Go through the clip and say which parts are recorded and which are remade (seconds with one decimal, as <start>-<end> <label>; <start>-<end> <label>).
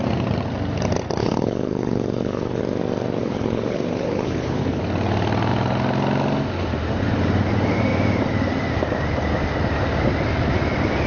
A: 0.0-1.2 recorded; 1.2-2.6 remade; 2.6-3.2 recorded; 3.2-4.8 remade; 4.8-11.1 recorded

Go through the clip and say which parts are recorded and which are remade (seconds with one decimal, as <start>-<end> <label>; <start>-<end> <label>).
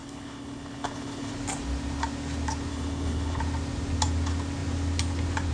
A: 0.0-1.3 remade; 1.3-2.7 recorded; 2.7-3.4 remade; 3.4-5.5 recorded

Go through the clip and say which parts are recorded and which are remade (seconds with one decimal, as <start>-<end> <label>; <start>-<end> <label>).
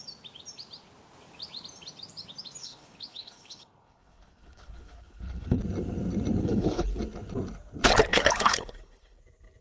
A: 0.0-2.6 recorded; 2.6-5.6 remade; 5.6-6.4 recorded; 6.4-7.0 remade; 7.0-8.1 recorded; 8.1-9.2 remade; 9.2-9.6 recorded